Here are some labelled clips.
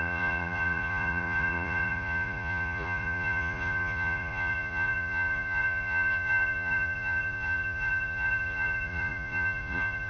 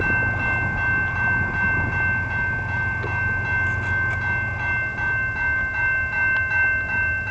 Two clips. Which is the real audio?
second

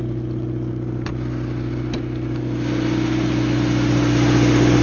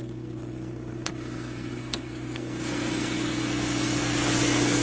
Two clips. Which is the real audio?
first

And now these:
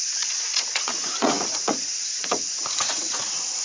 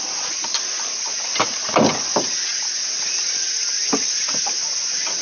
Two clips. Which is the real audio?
second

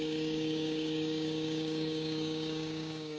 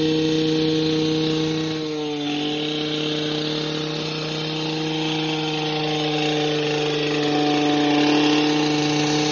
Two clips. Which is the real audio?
second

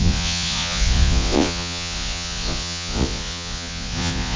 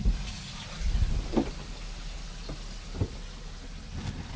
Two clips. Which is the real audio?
second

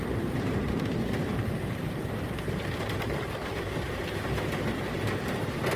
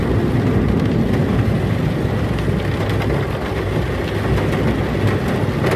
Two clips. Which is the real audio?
second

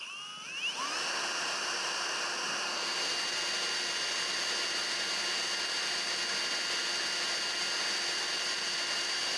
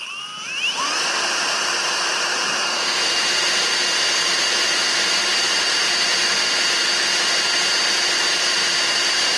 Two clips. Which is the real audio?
first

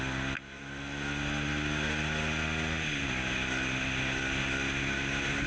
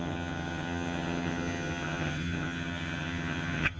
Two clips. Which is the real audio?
first